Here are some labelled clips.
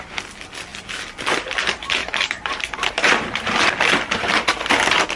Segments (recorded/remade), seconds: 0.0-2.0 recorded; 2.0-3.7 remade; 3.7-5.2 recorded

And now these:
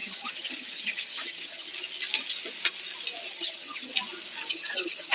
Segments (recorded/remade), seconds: 0.0-1.7 remade; 1.7-3.3 recorded; 3.3-3.9 remade; 3.9-4.5 recorded; 4.5-5.1 remade

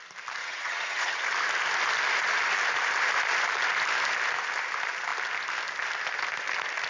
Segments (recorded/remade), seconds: 0.0-0.4 recorded; 0.4-1.2 remade; 1.2-6.9 recorded

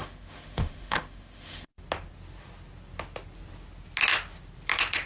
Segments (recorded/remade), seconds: 0.0-1.7 remade; 1.7-5.1 recorded

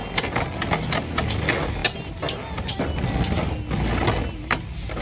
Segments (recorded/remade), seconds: 0.0-5.0 recorded

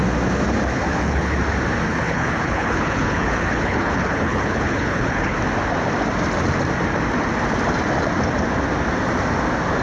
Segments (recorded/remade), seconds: 0.0-0.9 recorded; 0.9-1.4 remade; 1.4-1.9 recorded; 1.9-5.4 remade; 5.4-9.8 recorded

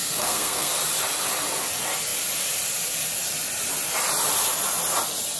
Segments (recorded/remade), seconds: 0.0-0.7 remade; 0.7-5.4 recorded